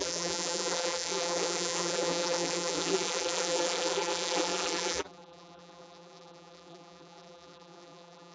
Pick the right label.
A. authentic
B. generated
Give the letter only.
B